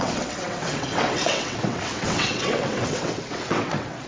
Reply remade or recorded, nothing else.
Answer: remade